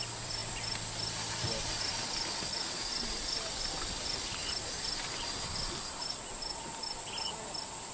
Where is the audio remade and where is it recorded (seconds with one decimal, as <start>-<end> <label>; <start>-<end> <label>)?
0.0-7.9 recorded

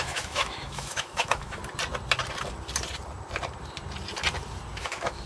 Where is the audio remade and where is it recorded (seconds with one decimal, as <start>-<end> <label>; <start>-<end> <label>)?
0.0-1.6 remade; 1.6-4.8 recorded; 4.8-5.3 remade